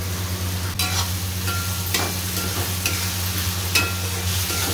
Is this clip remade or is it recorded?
recorded